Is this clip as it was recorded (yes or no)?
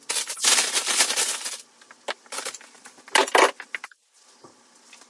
yes